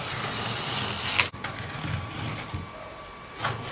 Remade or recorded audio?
recorded